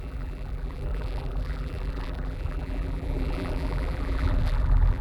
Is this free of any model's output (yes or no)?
no